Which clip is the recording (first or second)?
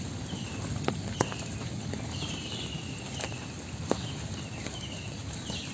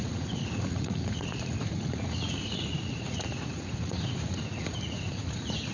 first